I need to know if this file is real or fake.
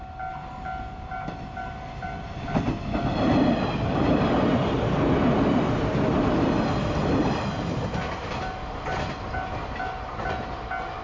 real